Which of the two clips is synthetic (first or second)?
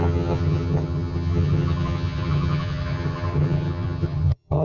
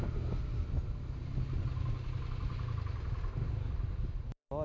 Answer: first